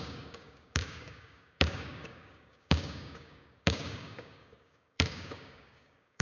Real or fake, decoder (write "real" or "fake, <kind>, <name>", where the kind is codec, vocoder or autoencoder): fake, codec, DAC